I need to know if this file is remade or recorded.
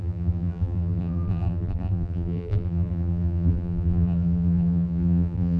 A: remade